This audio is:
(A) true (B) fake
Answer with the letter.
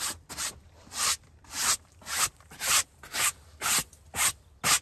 A